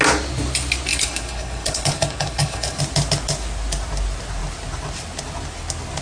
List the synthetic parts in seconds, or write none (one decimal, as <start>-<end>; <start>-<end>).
0.9-2.8